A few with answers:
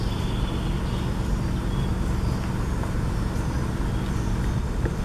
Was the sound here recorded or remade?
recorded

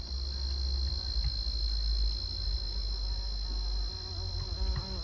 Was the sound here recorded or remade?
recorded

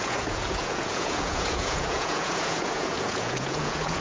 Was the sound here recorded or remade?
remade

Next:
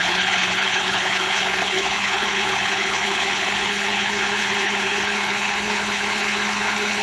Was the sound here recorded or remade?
remade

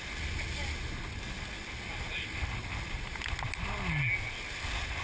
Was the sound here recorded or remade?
recorded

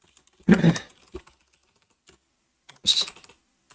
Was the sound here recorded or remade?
recorded